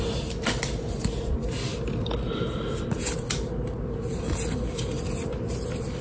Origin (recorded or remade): recorded